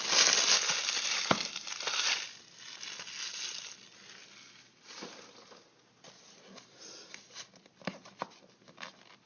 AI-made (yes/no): no